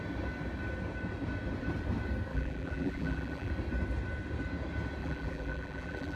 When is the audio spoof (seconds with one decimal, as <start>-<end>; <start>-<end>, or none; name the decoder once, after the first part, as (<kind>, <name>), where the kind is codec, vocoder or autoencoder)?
2.3-3.5 (vocoder, BigVGAN v2); 5.0-6.2